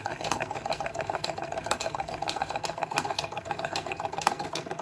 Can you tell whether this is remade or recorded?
remade